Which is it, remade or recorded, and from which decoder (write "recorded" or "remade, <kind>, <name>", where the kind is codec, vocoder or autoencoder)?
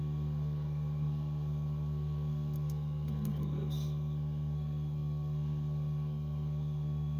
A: remade, codec, SNAC